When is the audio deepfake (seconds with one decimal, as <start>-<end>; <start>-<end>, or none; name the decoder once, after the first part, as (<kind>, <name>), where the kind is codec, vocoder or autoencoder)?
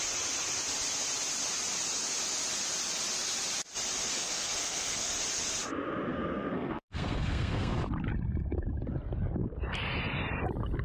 4.1-5.1 (codec, SNAC); 6.1-7.8